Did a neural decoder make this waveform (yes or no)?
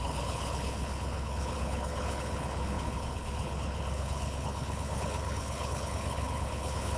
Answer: yes